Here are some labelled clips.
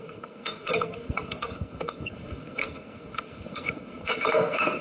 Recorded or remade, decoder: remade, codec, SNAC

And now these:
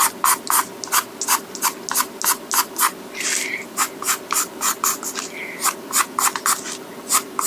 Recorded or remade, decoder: recorded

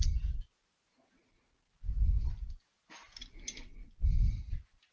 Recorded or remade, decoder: recorded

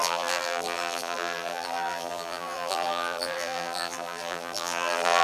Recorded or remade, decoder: remade, vocoder, BigVGAN v2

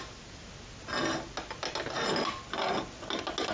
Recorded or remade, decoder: recorded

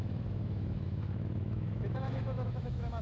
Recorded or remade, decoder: remade, autoencoder, DAC-VAE